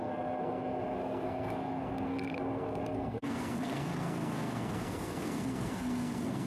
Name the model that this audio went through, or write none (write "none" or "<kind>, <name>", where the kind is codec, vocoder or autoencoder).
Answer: codec, SNAC